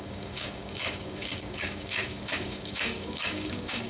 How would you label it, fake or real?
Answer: fake